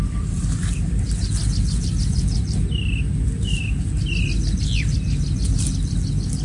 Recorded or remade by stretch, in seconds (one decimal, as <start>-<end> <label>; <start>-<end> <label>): 0.0-6.4 recorded